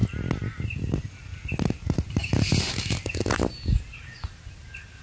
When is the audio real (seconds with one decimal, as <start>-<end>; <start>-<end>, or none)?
0.0-5.0